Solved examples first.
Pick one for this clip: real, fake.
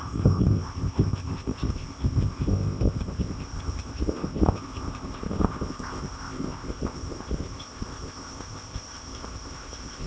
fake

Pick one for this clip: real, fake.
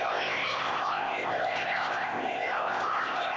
fake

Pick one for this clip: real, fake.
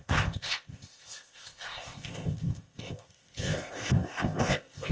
fake